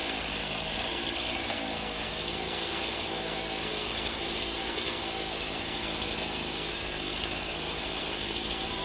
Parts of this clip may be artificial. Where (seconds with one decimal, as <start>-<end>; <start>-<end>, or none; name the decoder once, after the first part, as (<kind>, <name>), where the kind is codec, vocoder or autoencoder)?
0.0-8.8 (codec, SNAC)